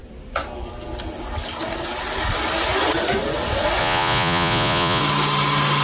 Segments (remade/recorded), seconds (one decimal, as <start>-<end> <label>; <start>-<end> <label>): 0.0-3.8 recorded; 3.8-5.0 remade; 5.0-5.8 recorded